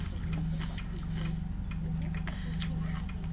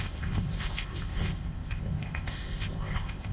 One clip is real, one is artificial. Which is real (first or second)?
first